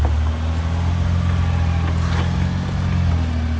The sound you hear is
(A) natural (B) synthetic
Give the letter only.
A